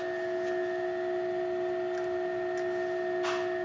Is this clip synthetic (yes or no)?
no